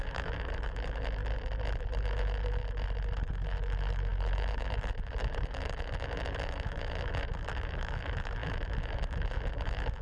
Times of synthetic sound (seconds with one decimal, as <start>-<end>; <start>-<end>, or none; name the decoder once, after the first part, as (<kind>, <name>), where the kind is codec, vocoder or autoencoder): 0.0-1.2 (autoencoder, DAC-VAE); 2.0-2.6; 3.3-10.0